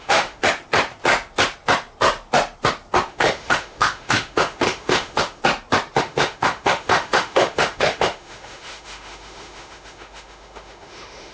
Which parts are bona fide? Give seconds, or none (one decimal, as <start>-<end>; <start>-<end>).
0.4-3.1; 5.4-6.0